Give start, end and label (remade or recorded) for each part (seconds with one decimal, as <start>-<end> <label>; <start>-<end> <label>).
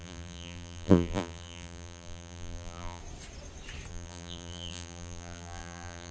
0.0-3.0 remade; 3.0-3.9 recorded; 3.9-6.1 remade